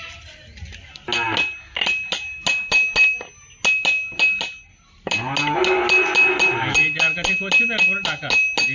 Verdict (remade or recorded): recorded